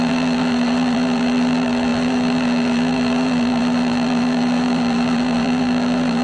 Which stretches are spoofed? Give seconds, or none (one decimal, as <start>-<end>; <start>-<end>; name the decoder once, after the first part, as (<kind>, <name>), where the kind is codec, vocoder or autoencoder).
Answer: 0.0-6.2 (vocoder, BigVGAN v2)